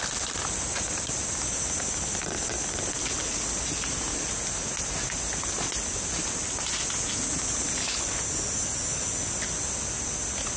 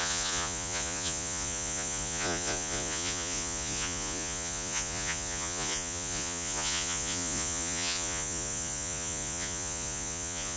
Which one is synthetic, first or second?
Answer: second